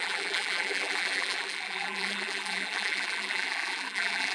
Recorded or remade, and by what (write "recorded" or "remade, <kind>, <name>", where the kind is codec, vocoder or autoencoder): remade, vocoder, BigVGAN v2